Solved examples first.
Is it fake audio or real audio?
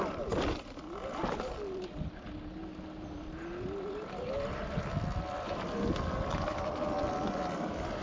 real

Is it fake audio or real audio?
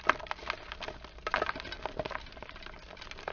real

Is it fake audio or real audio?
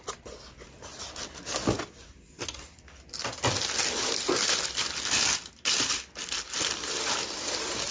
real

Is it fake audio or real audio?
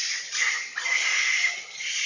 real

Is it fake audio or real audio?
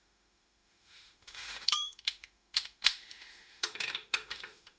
fake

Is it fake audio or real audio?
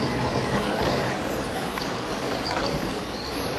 fake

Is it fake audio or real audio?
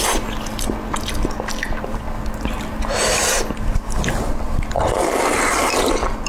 real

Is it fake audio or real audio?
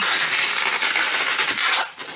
real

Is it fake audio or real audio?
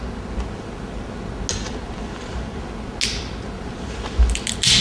real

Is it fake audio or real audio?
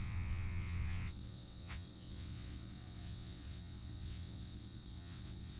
fake